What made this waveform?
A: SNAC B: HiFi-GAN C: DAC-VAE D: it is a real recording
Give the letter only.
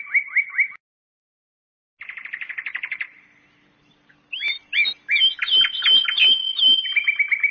D